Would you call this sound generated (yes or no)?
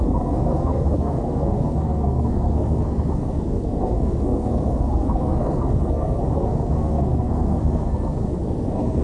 yes